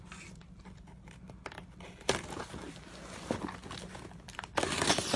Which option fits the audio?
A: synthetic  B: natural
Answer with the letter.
B